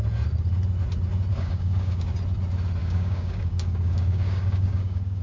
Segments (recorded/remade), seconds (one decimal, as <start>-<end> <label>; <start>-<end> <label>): 0.0-1.3 recorded; 1.3-2.1 remade; 2.1-2.8 recorded; 2.8-5.2 remade